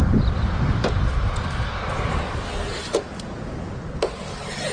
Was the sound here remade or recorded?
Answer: recorded